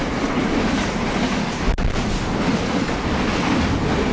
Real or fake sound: real